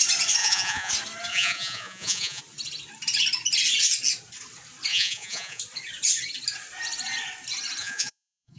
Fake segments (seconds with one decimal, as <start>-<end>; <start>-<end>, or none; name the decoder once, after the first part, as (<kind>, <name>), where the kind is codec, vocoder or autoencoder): 0.4-0.9 (vocoder, Vocos); 1.3-2.4; 4.9-5.6; 7.8-8.6